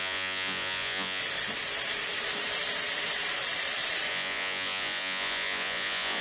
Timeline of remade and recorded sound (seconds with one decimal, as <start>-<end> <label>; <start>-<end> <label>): 0.0-1.2 remade; 1.2-4.1 recorded; 4.1-6.2 remade